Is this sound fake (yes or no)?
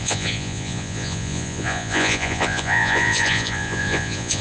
yes